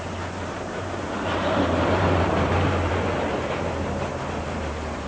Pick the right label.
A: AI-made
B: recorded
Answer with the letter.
A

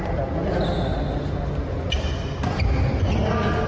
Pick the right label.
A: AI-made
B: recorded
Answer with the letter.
B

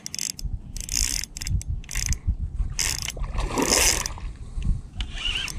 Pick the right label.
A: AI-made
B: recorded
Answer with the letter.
B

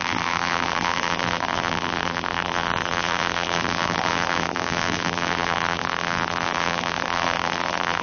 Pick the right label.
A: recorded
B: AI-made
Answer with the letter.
B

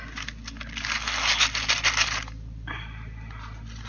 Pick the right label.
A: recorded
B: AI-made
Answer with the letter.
A